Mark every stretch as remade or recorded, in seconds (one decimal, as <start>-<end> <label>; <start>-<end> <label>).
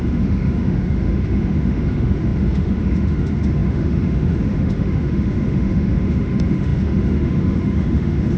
0.0-8.4 remade